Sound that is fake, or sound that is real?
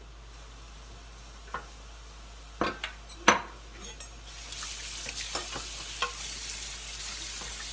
real